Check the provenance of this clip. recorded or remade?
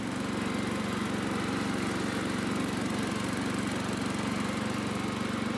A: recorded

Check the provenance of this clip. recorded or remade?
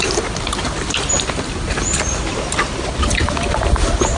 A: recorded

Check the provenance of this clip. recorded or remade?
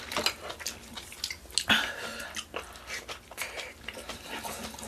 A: recorded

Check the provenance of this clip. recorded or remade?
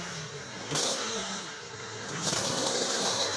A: remade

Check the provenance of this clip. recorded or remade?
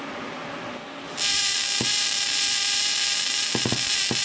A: recorded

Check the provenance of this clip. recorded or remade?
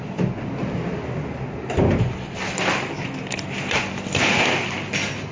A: recorded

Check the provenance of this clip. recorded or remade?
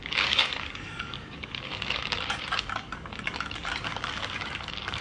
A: remade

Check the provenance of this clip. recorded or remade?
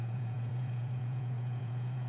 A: remade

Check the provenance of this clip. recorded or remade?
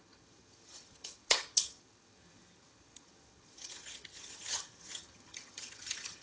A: remade